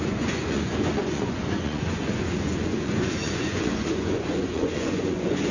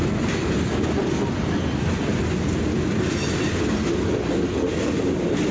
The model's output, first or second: first